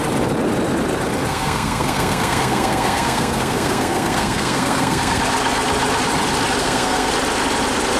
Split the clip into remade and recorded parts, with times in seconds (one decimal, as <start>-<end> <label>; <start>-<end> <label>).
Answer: 0.0-1.3 recorded; 1.3-5.2 remade; 5.2-6.6 recorded; 6.6-7.1 remade; 7.1-8.0 recorded